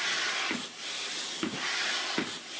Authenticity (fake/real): real